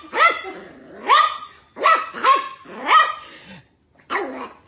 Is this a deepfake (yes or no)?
no